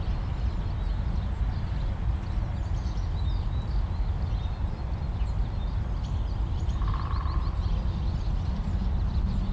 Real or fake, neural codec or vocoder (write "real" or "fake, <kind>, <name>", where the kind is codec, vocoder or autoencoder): real